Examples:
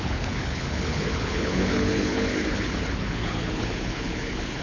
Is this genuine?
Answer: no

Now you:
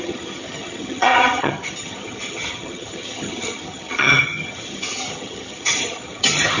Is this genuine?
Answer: no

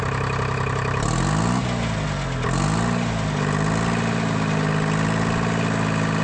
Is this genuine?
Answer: yes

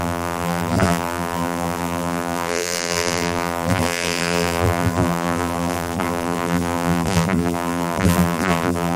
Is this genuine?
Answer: no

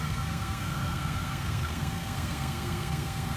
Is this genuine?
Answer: no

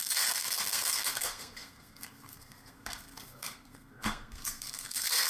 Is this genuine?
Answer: no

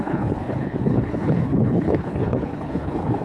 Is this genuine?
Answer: no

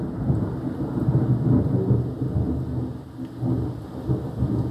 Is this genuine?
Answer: yes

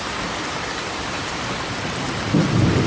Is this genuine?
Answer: yes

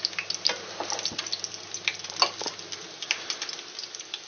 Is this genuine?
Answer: yes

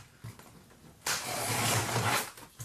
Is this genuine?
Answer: yes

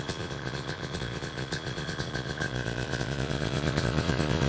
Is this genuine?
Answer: no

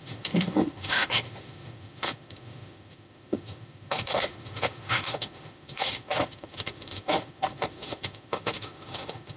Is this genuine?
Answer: no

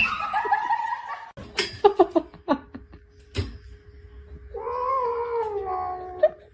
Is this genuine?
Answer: yes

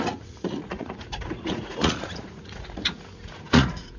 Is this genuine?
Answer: no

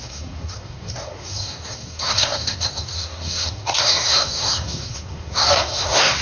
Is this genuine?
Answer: no